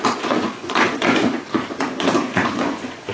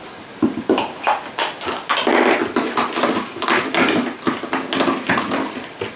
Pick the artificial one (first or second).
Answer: first